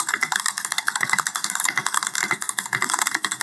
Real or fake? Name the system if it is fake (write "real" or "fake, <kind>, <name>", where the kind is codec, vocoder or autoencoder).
fake, codec, SNAC